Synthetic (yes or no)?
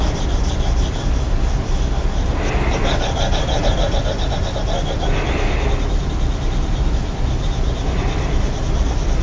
no